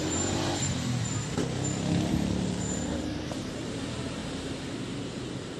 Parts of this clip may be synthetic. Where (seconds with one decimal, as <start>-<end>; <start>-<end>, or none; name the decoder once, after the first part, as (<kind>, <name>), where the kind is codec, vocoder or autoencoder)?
0.0-1.0 (vocoder, BigVGAN v2); 2.1-4.2; 5.0-5.6

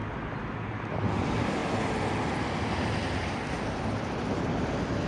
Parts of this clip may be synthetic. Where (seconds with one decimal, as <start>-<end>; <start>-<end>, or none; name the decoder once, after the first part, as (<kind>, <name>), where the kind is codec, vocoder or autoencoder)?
0.7-1.6 (vocoder, BigVGAN v2); 4.4-5.1

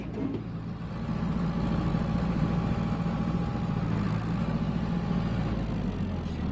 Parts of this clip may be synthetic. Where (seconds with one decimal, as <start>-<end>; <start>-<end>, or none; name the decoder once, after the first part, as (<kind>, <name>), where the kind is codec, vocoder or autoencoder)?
none

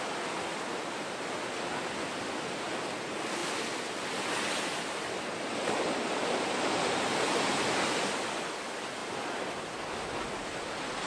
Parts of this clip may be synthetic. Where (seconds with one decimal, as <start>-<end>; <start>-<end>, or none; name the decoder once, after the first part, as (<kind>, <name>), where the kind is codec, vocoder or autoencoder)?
9.0-9.6 (vocoder, BigVGAN v2)

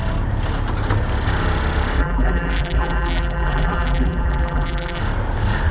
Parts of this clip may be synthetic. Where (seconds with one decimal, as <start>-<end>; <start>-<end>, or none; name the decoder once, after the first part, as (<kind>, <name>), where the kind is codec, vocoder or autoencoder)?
2.0-5.0 (vocoder, BigVGAN v2)

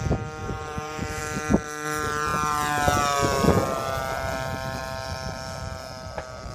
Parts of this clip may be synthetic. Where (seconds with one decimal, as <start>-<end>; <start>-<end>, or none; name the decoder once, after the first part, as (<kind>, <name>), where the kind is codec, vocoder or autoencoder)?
0.4-1.2 (vocoder, BigVGAN v2)

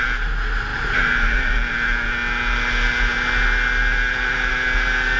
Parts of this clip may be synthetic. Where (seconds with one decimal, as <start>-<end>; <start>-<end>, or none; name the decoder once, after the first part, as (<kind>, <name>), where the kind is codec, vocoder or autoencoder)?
0.7-1.5 (vocoder, BigVGAN v2)

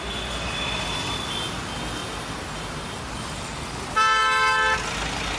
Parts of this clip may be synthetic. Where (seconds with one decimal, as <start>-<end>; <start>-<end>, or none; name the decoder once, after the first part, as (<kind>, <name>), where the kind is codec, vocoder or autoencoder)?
2.0-3.0 (vocoder, BigVGAN v2)